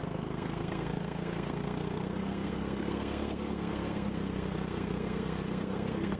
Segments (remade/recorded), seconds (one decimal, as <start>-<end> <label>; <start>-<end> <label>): 0.0-6.2 remade